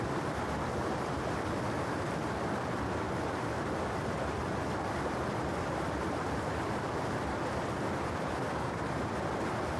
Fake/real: real